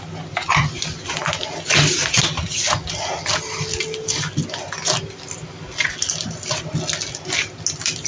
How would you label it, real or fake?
real